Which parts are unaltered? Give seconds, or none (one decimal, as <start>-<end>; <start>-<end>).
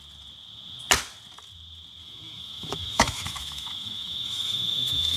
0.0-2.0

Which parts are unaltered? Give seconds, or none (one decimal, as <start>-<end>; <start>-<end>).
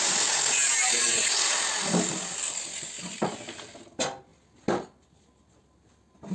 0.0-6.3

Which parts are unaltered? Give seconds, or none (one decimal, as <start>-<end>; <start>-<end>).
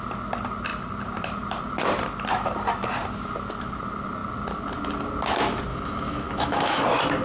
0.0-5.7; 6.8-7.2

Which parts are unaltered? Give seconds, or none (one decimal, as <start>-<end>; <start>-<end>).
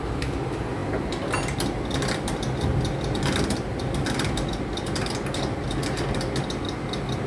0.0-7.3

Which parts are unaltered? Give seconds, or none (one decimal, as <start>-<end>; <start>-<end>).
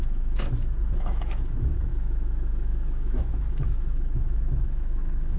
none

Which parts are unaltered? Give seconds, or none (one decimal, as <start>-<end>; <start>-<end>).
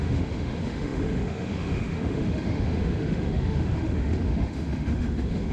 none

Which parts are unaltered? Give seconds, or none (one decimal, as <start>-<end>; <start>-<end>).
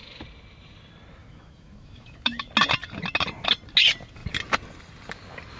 0.0-1.2; 2.5-5.6